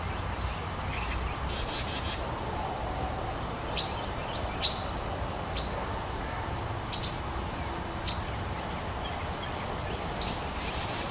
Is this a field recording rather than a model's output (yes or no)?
yes